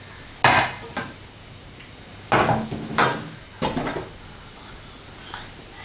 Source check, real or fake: real